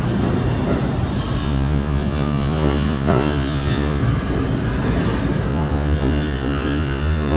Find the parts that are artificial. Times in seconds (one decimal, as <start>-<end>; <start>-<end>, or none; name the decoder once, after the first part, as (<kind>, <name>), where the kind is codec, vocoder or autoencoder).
1.4-4.0 (vocoder, Vocos); 5.5-7.4